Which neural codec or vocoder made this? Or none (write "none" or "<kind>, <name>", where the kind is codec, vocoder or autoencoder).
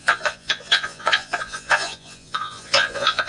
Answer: vocoder, Vocos